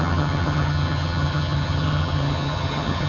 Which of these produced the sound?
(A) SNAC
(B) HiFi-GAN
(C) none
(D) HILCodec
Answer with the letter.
B